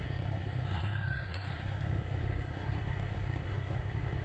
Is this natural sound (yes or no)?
no